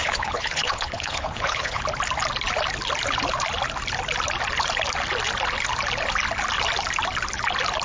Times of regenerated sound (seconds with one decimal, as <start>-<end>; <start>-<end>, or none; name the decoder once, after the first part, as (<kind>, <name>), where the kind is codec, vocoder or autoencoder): 0.0-1.8 (codec, HILCodec)

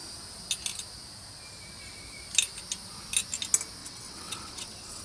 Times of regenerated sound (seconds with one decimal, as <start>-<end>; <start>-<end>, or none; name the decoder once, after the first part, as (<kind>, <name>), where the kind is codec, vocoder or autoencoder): 3.8-5.0 (vocoder, WaveNeXt)

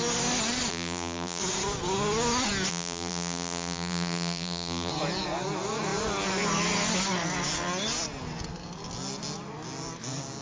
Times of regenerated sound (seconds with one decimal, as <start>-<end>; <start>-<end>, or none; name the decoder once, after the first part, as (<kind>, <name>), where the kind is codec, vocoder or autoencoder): 0.7-1.4 (vocoder, BigVGAN v2); 2.7-4.9

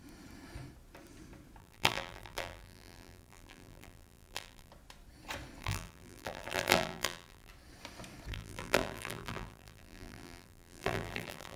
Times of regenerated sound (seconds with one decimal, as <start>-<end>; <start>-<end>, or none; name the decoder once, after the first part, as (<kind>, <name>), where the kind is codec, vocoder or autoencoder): 1.6-4.7 (vocoder, BigVGAN v2); 5.6-7.5; 8.3-11.6